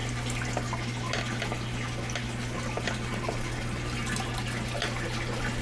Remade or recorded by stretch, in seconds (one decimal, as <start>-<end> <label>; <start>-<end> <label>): 0.0-5.6 recorded